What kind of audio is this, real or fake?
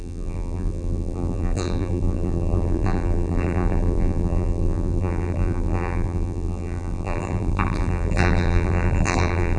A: fake